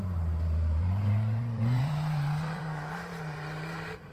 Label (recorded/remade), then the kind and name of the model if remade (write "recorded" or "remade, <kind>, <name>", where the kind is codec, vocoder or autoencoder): remade, vocoder, BigVGAN v2